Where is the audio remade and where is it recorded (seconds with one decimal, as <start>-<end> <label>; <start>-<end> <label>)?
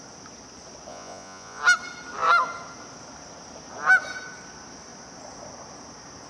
0.0-0.9 recorded; 0.9-1.6 remade; 1.6-6.3 recorded